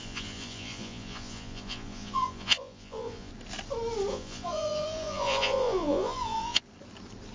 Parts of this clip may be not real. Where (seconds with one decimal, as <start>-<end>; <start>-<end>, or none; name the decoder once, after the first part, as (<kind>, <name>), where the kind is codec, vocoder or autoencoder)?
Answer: 0.0-3.3 (vocoder, Vocos); 4.1-6.6